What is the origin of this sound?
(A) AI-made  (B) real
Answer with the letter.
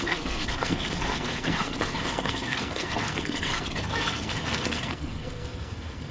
A